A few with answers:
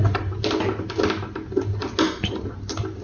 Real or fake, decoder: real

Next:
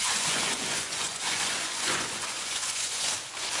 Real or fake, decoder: fake, vocoder, Vocos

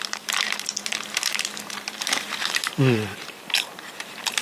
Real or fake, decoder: fake, vocoder, BigVGAN v2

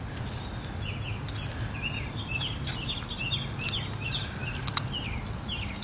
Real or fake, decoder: real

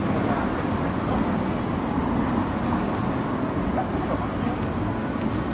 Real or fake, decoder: real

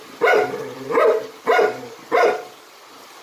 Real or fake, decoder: fake, vocoder, BigVGAN v2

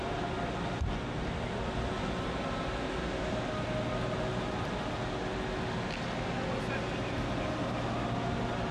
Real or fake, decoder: real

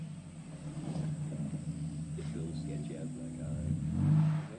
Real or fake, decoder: real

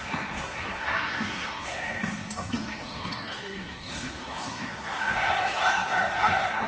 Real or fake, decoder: fake, codec, SNAC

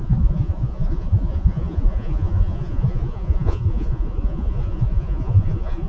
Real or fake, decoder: fake, vocoder, Vocos